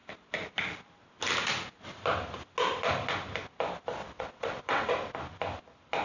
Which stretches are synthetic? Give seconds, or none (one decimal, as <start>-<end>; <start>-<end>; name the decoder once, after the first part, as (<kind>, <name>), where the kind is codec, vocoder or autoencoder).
4.0-4.9 (vocoder, WaveNeXt)

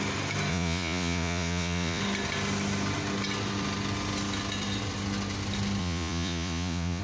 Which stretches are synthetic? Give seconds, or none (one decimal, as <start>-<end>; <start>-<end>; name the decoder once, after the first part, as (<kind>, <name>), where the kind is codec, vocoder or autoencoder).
0.5-2.0 (vocoder, Vocos); 5.8-7.0